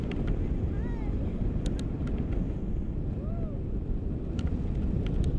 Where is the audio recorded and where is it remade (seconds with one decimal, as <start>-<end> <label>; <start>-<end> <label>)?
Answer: 0.0-5.4 recorded